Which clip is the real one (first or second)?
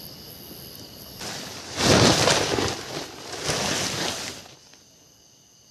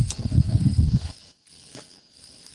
first